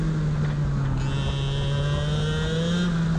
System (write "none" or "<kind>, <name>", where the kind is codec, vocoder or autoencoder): none